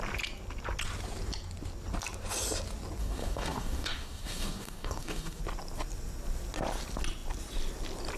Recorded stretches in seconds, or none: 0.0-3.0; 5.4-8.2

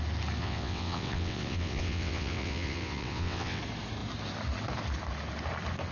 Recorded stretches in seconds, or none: 0.0-0.4; 3.6-5.9